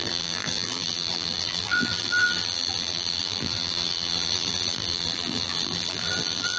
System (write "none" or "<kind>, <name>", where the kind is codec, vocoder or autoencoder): vocoder, BigVGAN v2